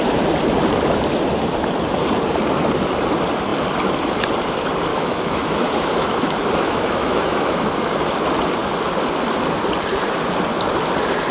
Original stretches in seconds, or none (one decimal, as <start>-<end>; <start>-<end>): 0.0-4.9; 7.8-11.3